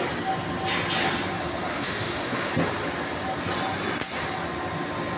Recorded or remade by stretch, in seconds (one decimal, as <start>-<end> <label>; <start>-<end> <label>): 0.0-1.7 recorded; 1.7-2.5 remade; 2.5-5.2 recorded